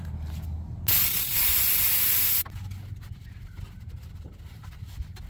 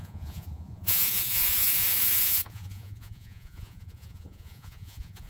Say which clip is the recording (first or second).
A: first